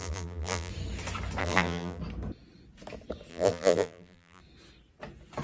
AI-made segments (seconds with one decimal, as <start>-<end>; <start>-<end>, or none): 0.0-0.7; 1.4-2.0; 3.3-4.4